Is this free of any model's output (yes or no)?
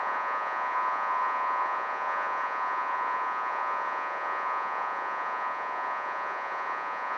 no